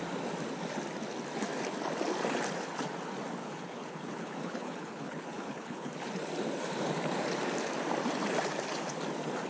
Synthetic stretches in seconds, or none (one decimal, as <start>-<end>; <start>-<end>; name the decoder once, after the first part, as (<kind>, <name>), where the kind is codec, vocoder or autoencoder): 3.4-5.9 (codec, HILCodec)